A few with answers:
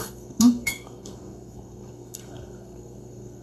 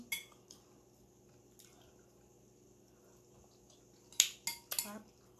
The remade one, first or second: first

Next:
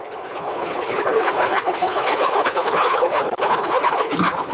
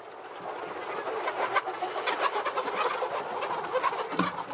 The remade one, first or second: first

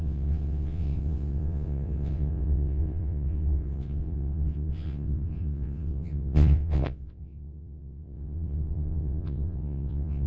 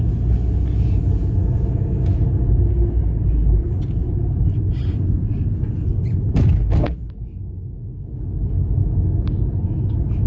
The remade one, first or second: first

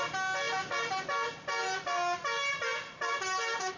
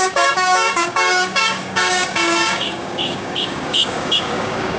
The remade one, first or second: second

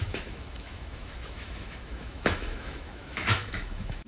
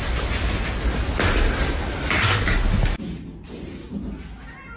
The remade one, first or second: first